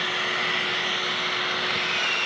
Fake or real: real